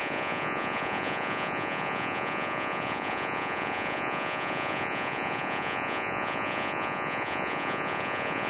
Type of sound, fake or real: fake